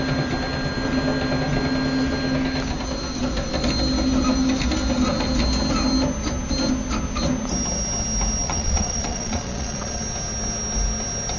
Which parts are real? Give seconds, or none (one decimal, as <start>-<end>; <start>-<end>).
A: 0.0-8.4; 10.0-11.4